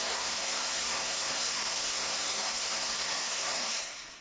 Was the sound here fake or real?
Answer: fake